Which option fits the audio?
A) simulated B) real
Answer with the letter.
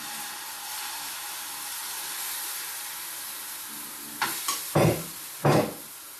B